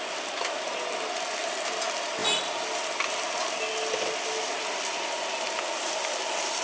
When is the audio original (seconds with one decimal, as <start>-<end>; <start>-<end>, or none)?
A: 0.0-6.6